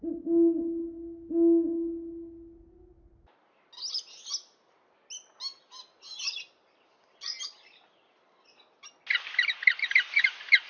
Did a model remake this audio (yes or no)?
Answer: no